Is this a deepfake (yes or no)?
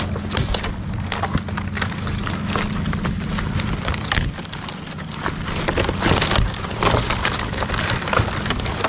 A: no